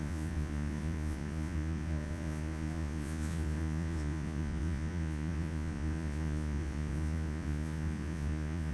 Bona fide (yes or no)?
no